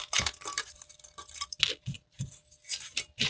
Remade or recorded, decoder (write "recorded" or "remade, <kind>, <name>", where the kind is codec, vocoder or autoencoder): recorded